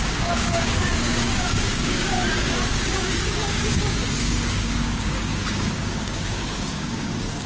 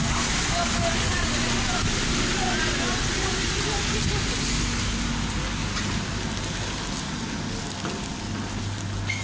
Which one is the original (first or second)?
second